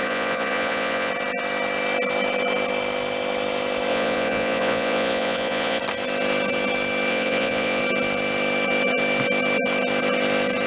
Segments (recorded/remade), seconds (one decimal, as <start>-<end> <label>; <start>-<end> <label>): 0.0-1.1 remade; 1.1-3.9 recorded; 3.9-5.8 remade; 5.8-7.1 recorded; 7.1-7.8 remade; 7.8-10.7 recorded